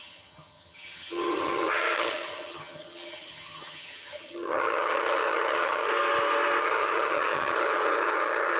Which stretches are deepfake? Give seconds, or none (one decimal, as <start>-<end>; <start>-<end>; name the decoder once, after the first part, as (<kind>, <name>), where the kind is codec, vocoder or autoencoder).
0.0-5.9 (vocoder, HiFi-GAN); 6.6-8.6